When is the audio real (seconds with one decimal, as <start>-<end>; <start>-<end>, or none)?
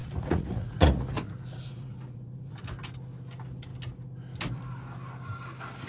2.6-5.9